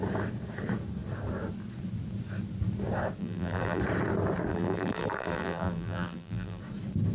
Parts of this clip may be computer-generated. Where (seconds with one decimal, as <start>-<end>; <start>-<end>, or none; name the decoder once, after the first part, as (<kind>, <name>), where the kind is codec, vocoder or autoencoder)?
3.2-3.8 (vocoder, BigVGAN v2); 4.5-6.6